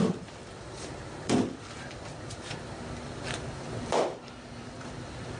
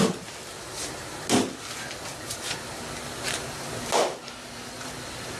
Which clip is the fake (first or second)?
first